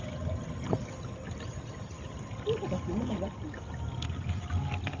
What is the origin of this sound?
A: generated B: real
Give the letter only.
B